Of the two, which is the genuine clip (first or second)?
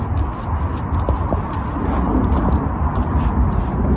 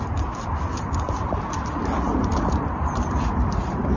first